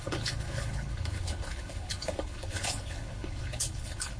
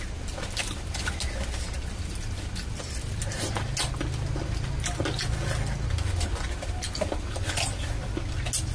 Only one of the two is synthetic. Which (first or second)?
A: first